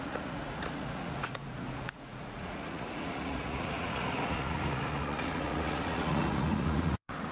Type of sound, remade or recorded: remade